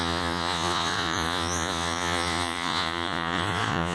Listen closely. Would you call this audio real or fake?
fake